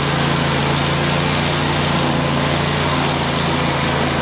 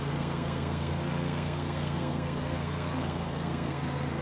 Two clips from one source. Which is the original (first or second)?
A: first